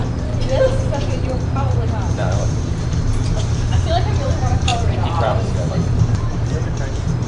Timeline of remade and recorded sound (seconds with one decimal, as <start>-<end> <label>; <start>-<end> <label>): 0.0-0.7 recorded; 0.7-7.3 remade